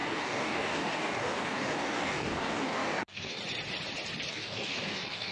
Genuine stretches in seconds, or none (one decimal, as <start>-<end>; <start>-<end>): 3.4-4.3

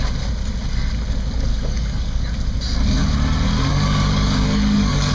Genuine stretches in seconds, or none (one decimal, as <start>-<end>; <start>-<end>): 0.0-1.5; 2.2-3.7

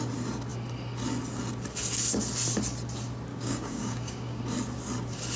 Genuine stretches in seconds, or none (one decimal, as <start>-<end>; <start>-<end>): 0.0-3.3; 4.4-5.4

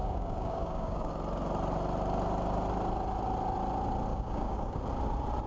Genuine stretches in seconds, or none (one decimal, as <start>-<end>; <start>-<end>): 1.1-4.1; 4.8-5.5

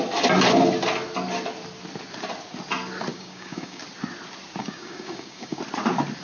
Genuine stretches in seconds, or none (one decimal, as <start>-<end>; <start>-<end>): 0.0-3.1; 3.8-4.6; 5.6-6.2